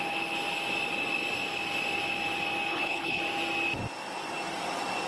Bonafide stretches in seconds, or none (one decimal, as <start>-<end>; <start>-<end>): 0.0-2.7; 3.2-5.1